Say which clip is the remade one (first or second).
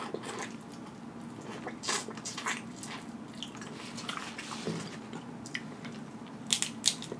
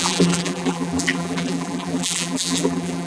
second